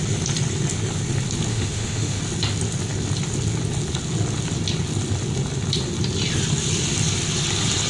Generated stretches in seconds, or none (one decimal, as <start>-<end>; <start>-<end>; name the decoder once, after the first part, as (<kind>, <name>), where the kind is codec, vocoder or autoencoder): 1.5-2.2 (autoencoder, DAC-VAE)